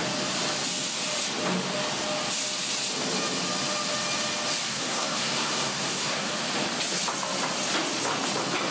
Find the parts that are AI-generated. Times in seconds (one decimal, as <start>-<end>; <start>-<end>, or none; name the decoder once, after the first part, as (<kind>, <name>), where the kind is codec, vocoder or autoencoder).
4.7-6.3 (codec, SNAC)